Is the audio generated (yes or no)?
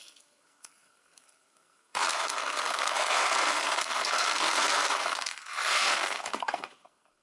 yes